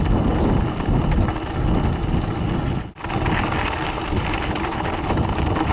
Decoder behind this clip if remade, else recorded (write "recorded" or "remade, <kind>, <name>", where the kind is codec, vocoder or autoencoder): recorded